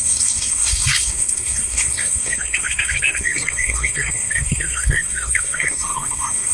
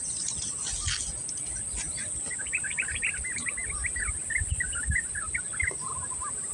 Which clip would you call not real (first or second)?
first